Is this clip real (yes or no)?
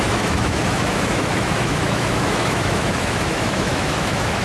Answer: no